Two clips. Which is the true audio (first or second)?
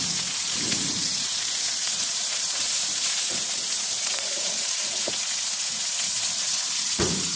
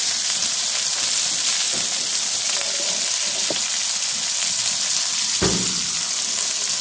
second